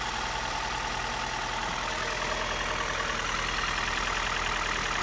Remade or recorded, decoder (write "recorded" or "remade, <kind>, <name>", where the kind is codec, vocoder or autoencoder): recorded